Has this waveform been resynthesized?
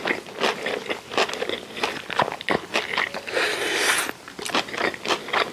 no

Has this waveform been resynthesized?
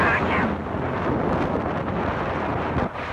no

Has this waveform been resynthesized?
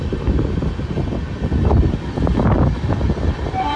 no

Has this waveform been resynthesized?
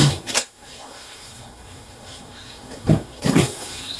yes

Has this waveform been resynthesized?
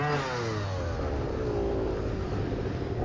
no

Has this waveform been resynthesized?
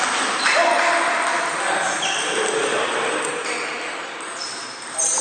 no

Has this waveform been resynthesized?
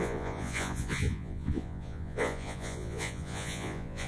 yes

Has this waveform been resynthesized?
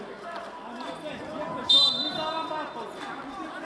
no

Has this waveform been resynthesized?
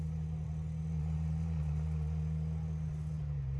no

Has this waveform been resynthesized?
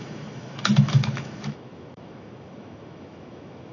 yes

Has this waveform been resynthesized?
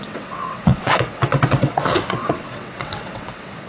yes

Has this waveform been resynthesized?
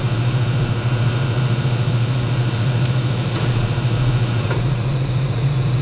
yes